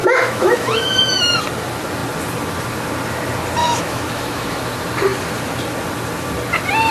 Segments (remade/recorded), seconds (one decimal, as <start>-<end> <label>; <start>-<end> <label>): 0.0-1.4 remade; 1.4-3.6 recorded; 3.6-4.6 remade; 4.6-6.9 recorded